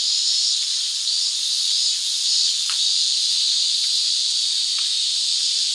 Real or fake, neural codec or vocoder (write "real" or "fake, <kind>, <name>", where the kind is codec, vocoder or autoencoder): fake, vocoder, BigVGAN v2